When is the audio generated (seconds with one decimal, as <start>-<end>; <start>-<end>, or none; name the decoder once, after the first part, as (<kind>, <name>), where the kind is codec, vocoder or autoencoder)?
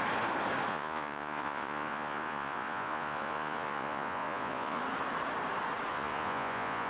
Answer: 0.7-4.8 (vocoder, Vocos); 5.9-6.9